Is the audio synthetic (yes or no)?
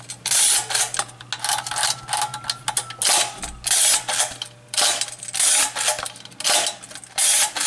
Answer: no